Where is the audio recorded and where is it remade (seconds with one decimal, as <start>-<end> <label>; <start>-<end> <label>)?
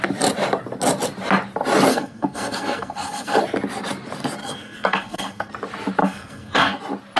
0.0-1.9 recorded; 1.9-3.4 remade; 3.4-4.4 recorded; 4.4-5.5 remade; 5.5-6.0 recorded; 6.0-6.8 remade; 6.8-7.2 recorded